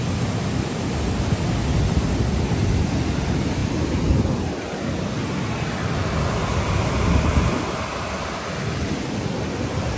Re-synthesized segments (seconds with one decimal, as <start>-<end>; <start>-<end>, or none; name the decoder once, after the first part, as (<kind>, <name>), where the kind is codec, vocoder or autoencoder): none

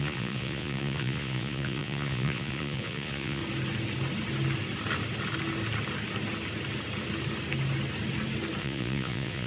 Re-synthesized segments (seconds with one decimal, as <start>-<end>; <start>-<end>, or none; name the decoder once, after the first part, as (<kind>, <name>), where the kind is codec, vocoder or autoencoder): 0.0-3.4 (vocoder, Vocos); 8.6-9.5

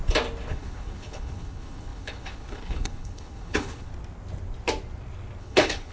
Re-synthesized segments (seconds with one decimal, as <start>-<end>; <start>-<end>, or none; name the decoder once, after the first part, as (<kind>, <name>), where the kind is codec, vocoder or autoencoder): 0.5-3.9 (codec, HILCodec); 5.4-5.9

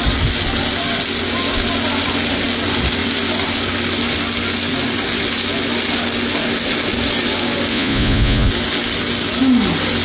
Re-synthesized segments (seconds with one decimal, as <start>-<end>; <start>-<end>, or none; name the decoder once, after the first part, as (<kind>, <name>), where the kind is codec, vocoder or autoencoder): 7.7-8.5 (vocoder, Vocos)

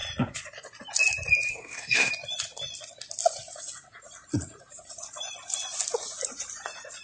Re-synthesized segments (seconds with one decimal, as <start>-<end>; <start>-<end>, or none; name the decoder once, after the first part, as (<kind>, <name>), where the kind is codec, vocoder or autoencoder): 1.5-2.1 (codec, SNAC)

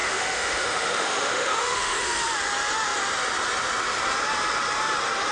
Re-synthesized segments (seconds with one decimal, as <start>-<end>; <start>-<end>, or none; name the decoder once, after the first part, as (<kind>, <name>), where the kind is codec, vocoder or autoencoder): 0.0-2.2 (autoencoder, DAC-VAE)

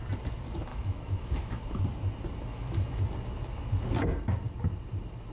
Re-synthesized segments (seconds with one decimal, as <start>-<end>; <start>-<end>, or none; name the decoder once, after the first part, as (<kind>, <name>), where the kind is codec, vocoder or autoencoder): 0.7-1.6 (autoencoder, DAC-VAE); 2.5-3.0